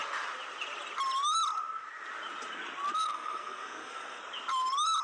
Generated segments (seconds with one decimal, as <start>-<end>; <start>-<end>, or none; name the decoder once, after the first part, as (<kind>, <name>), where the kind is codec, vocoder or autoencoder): 3.0-4.2 (codec, SNAC)